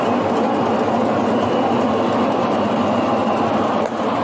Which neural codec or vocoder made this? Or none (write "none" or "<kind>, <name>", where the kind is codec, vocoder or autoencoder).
none